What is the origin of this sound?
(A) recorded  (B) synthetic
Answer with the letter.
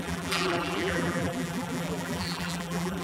B